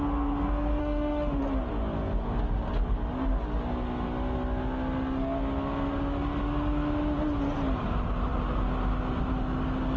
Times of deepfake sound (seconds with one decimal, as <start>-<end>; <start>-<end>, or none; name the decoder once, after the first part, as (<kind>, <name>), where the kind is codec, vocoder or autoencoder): 0.8-1.4 (autoencoder, DAC-VAE)

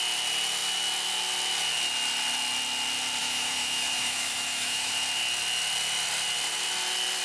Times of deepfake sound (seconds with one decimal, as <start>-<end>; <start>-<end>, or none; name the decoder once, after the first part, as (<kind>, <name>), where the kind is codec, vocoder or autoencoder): 3.2-4.9 (autoencoder, DAC-VAE)